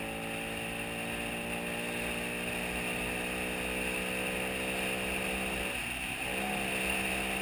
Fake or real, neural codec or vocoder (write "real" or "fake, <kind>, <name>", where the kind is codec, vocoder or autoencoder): real